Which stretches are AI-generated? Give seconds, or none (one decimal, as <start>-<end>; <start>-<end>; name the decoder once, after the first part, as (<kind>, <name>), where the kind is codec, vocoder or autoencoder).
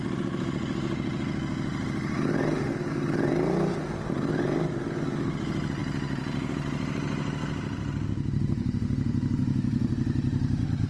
none